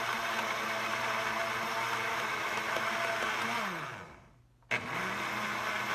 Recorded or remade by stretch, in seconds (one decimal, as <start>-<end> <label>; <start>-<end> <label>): 0.0-2.1 recorded; 2.1-2.9 remade; 2.9-5.9 recorded